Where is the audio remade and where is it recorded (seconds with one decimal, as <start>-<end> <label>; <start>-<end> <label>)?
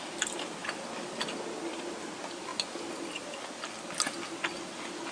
0.0-5.1 recorded